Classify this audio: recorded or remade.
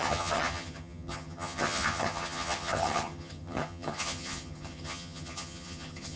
remade